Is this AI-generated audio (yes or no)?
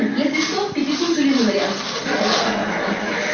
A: no